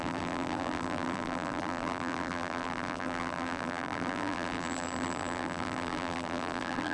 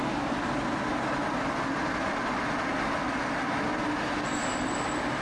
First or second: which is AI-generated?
first